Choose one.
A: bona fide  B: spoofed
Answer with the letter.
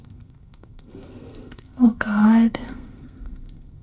B